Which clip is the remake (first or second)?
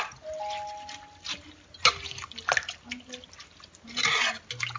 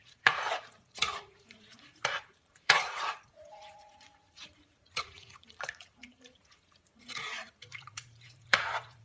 second